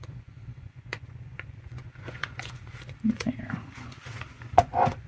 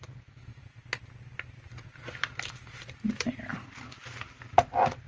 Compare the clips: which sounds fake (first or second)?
first